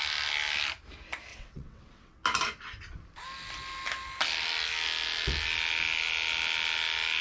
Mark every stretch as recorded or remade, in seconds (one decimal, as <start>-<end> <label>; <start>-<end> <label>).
0.0-1.3 recorded; 1.3-2.2 remade; 2.2-7.2 recorded